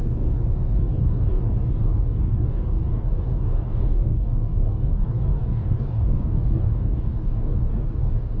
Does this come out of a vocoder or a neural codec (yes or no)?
yes